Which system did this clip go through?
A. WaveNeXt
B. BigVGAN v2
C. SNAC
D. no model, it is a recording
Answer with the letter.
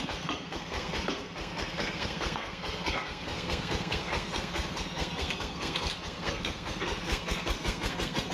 C